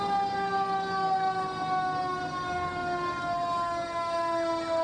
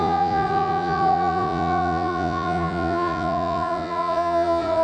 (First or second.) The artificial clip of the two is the second